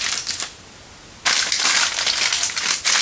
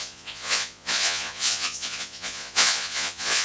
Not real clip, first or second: second